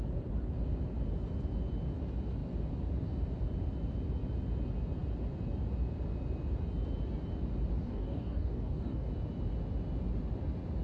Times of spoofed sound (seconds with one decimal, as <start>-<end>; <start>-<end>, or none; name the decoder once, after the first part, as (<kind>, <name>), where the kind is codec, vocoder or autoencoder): 7.8-9.1 (codec, DAC)